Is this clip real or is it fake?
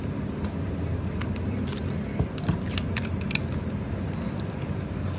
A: real